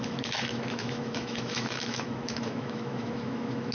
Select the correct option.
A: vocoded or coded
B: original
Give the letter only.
A